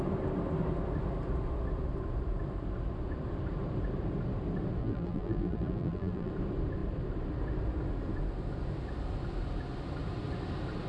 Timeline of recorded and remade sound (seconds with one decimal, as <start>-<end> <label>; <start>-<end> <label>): 0.0-4.8 recorded; 4.8-6.3 remade; 6.3-10.9 recorded

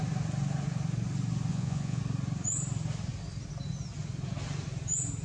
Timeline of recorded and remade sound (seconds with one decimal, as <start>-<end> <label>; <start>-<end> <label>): 0.0-1.5 recorded; 1.5-2.0 remade; 2.0-5.2 recorded

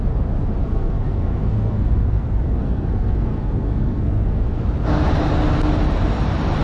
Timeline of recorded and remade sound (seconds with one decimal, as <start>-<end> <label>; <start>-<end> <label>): 0.0-0.6 recorded; 0.6-4.6 remade; 4.6-6.6 recorded

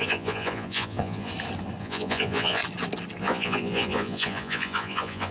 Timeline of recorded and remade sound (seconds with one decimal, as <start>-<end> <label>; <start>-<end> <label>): 0.0-1.3 remade; 1.3-1.8 recorded; 1.8-2.6 remade; 2.6-3.2 recorded; 3.2-5.3 remade